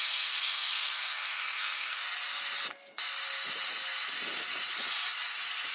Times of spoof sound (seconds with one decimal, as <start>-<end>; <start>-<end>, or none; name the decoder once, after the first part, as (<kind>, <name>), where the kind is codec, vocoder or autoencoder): 0.0-2.0 (codec, SNAC)